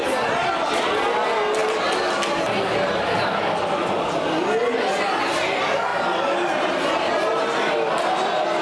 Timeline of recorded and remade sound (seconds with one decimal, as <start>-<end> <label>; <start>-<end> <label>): 0.0-8.6 recorded